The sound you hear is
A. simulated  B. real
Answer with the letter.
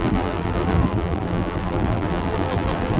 A